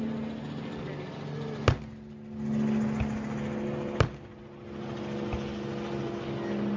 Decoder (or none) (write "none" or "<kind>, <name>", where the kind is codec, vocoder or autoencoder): none